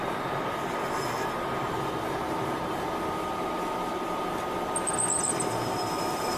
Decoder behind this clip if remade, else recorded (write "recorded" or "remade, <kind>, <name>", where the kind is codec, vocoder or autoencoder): recorded